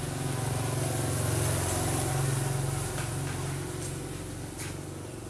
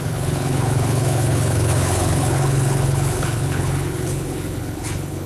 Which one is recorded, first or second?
first